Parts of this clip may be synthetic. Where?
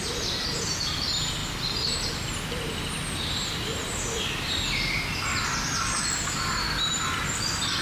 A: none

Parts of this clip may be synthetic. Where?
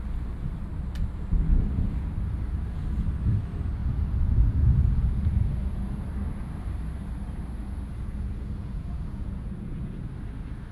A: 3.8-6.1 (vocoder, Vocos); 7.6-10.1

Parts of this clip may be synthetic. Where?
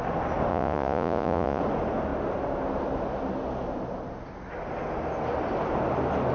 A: 0.5-1.6 (vocoder, Vocos)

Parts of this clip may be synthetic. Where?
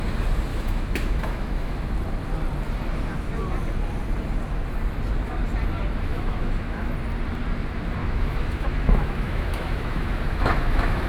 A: 0.5-1.9 (autoencoder, DAC-VAE); 6.1-6.9; 8.0-11.1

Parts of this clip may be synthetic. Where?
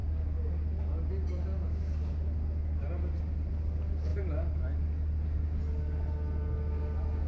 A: none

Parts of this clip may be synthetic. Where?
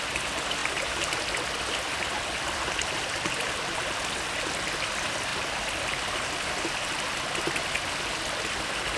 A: none